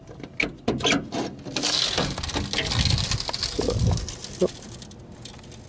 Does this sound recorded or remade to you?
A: recorded